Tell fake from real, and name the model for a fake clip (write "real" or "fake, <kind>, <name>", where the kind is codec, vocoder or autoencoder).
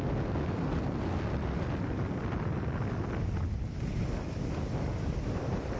real